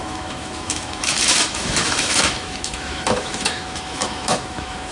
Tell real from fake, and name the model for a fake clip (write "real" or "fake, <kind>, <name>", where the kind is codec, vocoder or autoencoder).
fake, autoencoder, DAC-VAE